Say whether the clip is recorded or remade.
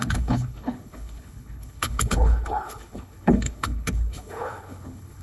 remade